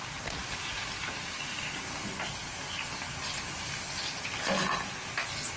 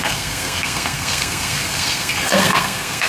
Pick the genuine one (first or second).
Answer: first